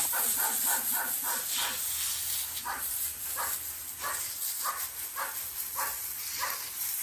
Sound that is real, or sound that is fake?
real